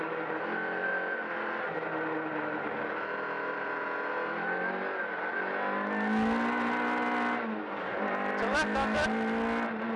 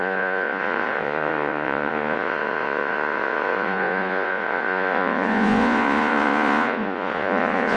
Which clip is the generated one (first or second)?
second